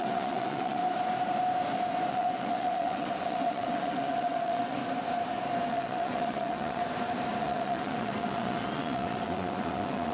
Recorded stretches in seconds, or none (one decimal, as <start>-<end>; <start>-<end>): 0.8-2.1; 4.8-5.7; 6.8-7.4